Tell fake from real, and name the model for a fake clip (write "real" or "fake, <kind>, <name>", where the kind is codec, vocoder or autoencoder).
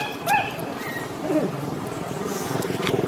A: real